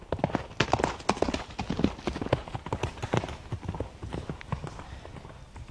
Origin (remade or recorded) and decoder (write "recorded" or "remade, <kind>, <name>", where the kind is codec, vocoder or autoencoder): recorded